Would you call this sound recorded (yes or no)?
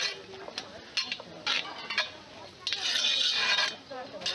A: yes